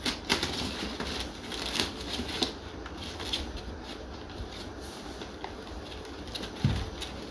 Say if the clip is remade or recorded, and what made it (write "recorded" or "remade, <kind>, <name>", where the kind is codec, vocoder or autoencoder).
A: recorded